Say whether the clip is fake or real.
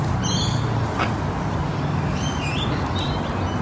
real